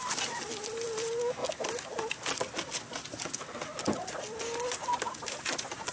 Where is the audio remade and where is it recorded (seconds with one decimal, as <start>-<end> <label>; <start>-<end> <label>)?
0.0-5.9 recorded